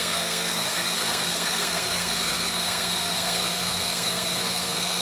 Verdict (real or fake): fake